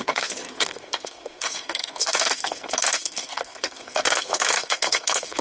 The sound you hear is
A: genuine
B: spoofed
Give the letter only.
B